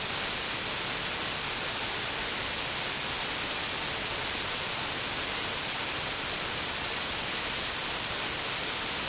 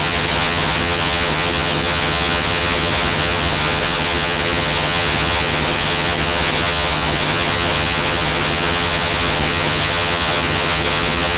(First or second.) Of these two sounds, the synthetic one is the second